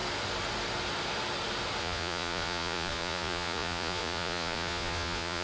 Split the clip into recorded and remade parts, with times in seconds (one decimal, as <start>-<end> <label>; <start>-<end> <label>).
0.0-1.8 recorded; 1.8-5.4 remade